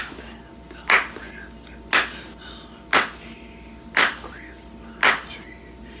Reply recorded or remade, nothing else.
recorded